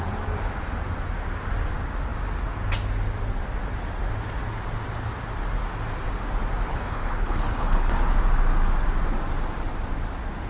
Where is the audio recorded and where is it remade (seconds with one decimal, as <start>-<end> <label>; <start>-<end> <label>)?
0.0-6.7 recorded; 6.7-7.9 remade; 7.9-10.5 recorded